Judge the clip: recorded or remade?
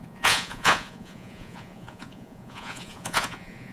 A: remade